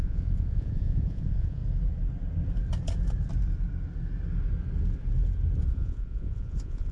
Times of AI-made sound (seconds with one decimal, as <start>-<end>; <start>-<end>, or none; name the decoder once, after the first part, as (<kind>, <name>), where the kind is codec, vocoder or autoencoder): 0.0-1.6 (vocoder, Vocos); 5.7-6.9